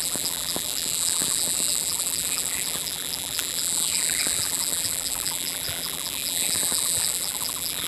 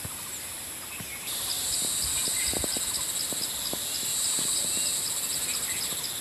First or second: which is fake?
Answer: first